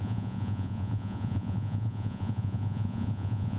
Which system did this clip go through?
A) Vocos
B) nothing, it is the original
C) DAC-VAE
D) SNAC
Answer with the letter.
A